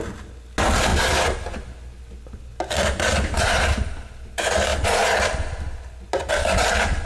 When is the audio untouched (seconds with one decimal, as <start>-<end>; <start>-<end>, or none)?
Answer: 0.0-7.1